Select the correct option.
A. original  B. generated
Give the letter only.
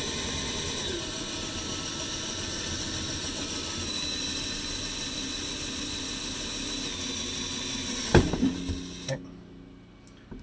A